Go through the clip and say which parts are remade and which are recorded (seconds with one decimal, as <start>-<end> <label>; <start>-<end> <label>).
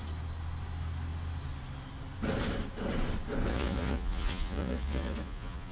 0.0-3.5 recorded; 3.5-5.7 remade